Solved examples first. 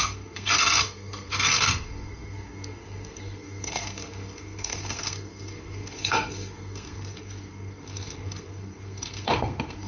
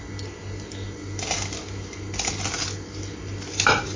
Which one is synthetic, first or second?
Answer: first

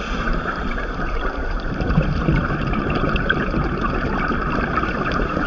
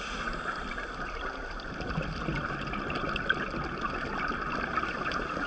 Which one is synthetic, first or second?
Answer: first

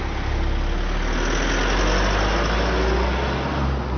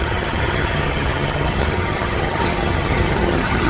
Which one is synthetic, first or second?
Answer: second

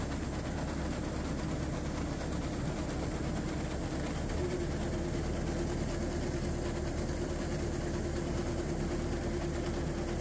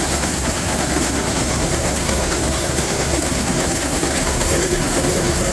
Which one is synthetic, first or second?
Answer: second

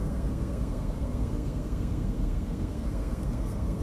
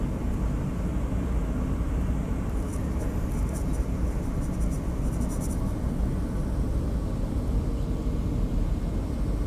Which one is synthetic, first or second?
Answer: first